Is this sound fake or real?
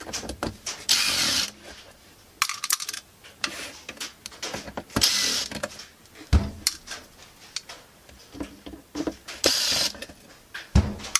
real